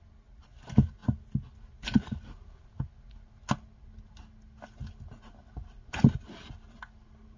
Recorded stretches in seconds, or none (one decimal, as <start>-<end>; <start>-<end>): 0.0-7.4